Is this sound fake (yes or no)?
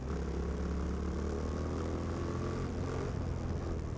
no